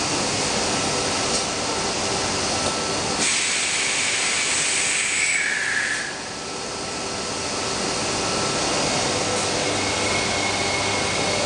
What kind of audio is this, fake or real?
real